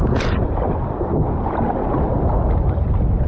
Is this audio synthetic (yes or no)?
no